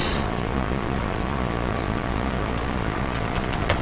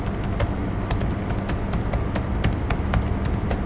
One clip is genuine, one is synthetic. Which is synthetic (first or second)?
first